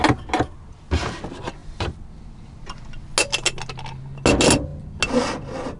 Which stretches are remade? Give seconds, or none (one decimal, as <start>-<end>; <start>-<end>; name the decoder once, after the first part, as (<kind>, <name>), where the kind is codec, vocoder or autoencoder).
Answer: 1.6-2.6 (vocoder, BigVGAN v2)

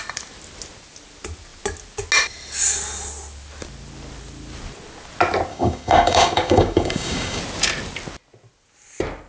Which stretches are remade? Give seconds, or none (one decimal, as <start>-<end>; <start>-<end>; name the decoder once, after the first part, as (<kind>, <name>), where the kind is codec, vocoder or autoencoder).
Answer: 5.5-7.4 (codec, DAC)